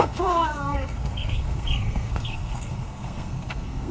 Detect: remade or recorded remade